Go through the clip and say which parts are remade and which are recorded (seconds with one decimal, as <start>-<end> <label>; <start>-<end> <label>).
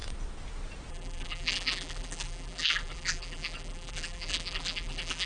0.0-0.9 recorded; 0.9-5.3 remade